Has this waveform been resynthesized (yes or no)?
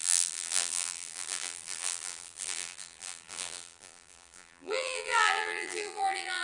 yes